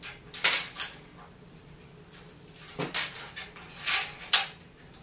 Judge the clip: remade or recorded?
recorded